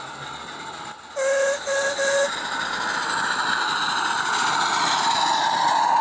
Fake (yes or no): no